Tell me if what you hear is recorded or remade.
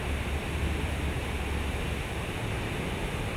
recorded